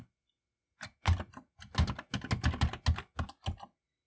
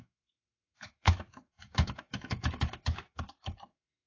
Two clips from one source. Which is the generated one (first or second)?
second